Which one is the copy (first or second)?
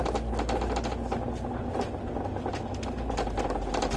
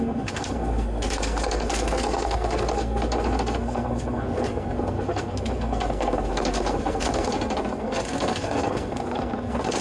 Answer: second